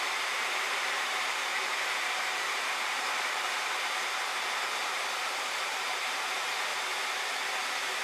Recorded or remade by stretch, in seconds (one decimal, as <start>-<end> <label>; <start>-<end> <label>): 0.0-1.5 remade; 1.5-3.0 recorded; 3.0-4.3 remade; 4.3-4.8 recorded; 4.8-6.7 remade; 6.7-7.6 recorded; 7.6-8.0 remade